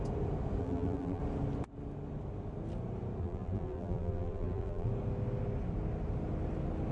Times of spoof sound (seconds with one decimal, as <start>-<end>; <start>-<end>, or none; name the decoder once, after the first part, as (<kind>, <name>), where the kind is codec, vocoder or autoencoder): 0.6-1.2 (vocoder, BigVGAN v2); 3.2-4.9